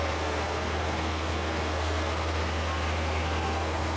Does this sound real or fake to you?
fake